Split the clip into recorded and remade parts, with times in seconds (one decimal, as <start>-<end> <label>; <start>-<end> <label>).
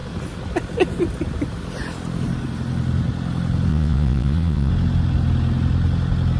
0.0-3.7 recorded; 3.7-4.7 remade; 4.7-6.4 recorded